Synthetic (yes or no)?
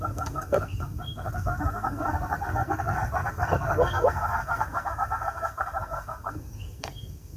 yes